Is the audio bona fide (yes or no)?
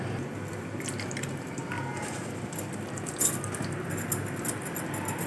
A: yes